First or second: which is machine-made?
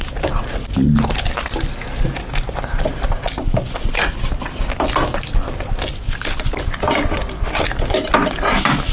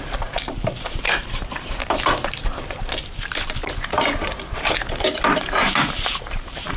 second